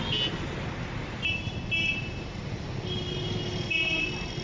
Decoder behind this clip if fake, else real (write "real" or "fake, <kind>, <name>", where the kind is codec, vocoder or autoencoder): real